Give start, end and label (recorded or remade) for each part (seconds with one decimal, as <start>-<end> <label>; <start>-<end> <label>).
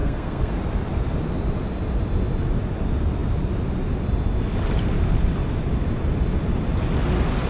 0.0-0.5 remade; 0.5-7.5 recorded